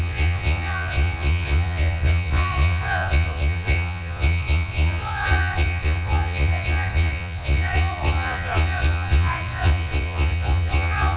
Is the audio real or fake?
fake